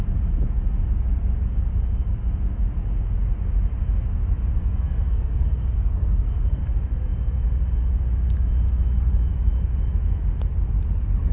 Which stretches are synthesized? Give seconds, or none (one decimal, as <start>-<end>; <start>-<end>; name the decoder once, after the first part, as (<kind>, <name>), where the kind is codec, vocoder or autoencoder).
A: 4.6-6.6 (codec, SNAC)